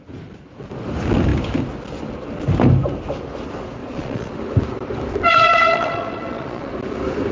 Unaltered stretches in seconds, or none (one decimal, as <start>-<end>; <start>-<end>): 0.0-3.8; 4.3-5.3; 6.7-7.3